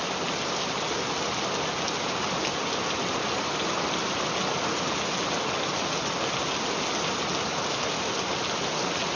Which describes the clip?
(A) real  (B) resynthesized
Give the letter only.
A